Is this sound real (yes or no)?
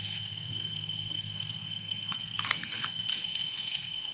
no